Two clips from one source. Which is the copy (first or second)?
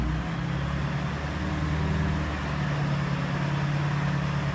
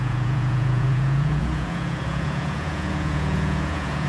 second